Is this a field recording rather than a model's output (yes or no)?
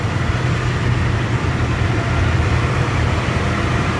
yes